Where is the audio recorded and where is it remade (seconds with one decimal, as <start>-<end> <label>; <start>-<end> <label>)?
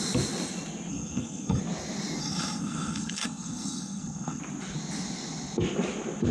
0.0-0.9 recorded; 0.9-1.6 remade; 1.6-2.2 recorded; 2.2-4.4 remade; 4.4-6.3 recorded